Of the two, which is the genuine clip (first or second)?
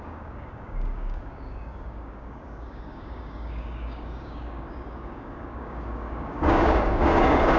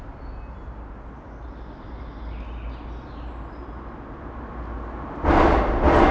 second